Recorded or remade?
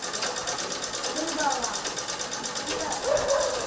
recorded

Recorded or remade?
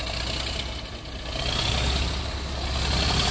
recorded